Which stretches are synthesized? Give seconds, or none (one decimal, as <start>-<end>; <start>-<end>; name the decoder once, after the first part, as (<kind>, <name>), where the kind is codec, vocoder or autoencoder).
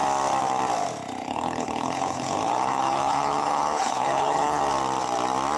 1.2-4.6 (codec, HILCodec)